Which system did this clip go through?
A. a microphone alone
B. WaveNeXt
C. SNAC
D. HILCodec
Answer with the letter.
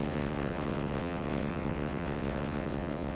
B